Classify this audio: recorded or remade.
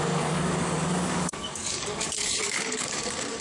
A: remade